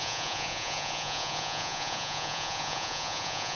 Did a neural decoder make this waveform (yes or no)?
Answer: yes